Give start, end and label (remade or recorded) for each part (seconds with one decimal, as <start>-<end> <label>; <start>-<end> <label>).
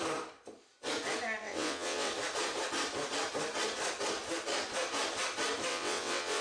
0.0-1.4 recorded; 1.4-2.1 remade; 2.1-5.7 recorded; 5.7-6.4 remade